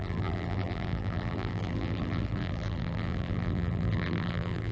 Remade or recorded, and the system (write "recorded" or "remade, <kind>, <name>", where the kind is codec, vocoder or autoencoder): remade, vocoder, BigVGAN v2